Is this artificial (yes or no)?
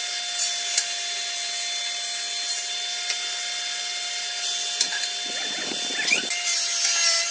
no